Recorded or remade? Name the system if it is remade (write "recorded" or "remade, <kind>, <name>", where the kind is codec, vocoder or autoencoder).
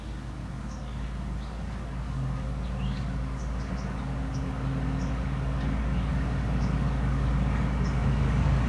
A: remade, codec, DAC